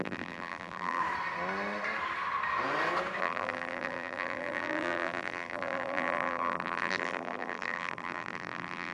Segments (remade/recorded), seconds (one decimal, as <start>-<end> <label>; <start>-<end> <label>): 0.0-1.0 remade; 1.0-3.2 recorded; 3.2-8.9 remade